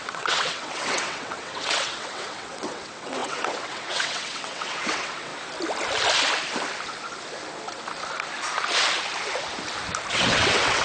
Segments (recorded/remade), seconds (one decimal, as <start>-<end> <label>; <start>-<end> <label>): 0.0-5.3 remade; 5.3-10.1 recorded; 10.1-10.8 remade